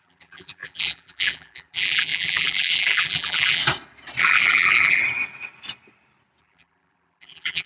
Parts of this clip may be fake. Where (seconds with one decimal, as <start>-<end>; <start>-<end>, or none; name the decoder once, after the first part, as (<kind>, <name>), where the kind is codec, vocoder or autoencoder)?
0.0-3.6 (vocoder, BigVGAN v2); 4.2-5.0; 6.4-7.7